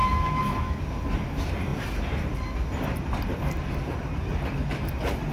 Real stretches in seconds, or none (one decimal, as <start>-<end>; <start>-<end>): 0.8-5.3